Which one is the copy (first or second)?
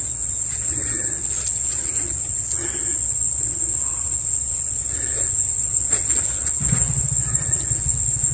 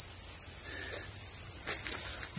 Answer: first